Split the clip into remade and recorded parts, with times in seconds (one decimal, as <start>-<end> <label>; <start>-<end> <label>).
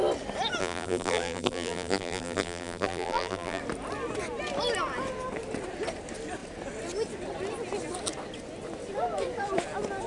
0.0-0.6 recorded; 0.6-3.6 remade; 3.6-10.1 recorded